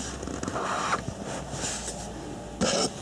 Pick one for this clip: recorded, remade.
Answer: recorded